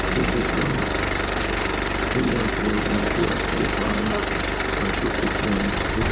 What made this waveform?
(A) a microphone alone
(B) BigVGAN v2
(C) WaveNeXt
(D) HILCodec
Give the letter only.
A